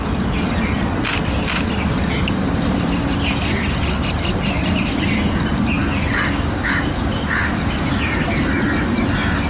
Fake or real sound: real